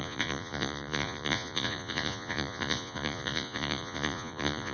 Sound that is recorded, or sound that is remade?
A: remade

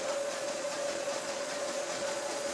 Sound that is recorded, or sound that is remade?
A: remade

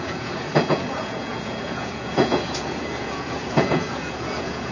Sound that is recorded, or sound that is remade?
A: remade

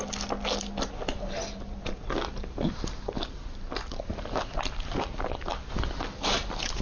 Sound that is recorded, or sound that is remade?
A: recorded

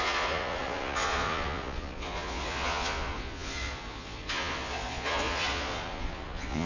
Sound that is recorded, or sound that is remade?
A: remade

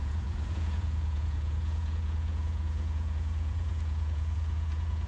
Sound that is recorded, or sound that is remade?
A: remade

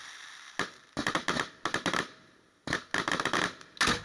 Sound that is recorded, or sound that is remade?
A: recorded